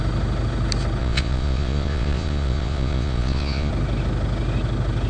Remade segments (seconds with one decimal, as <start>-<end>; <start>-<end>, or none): 1.0-3.7